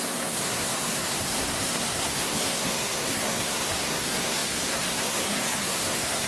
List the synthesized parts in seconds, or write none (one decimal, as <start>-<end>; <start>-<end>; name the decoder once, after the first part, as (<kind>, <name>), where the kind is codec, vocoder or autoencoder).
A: 0.0-6.3 (codec, SNAC)